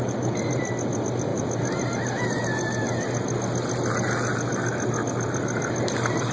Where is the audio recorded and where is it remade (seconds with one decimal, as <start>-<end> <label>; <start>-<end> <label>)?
0.0-6.3 recorded